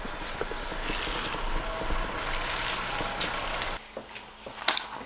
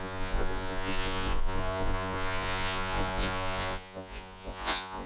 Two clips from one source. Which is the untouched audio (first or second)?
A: first